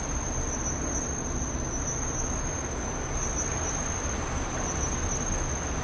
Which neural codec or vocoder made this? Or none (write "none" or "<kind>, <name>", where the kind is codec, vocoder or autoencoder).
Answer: none